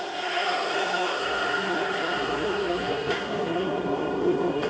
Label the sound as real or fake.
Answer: fake